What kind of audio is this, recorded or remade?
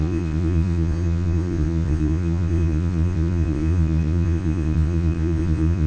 remade